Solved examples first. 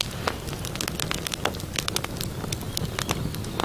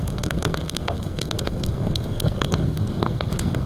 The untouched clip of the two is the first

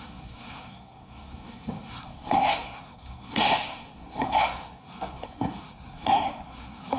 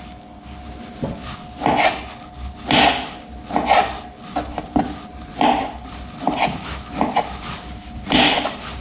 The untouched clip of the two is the second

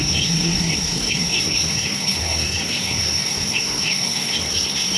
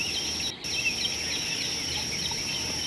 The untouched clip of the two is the second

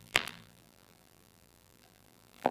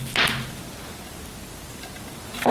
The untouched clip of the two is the second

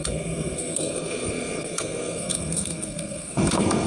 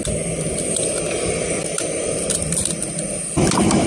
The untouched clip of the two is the second